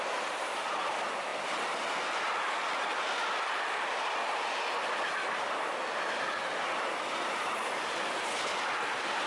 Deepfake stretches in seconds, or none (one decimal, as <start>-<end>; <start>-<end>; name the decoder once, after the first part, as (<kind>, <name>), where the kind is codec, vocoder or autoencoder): none